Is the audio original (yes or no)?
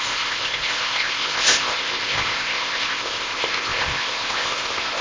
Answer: no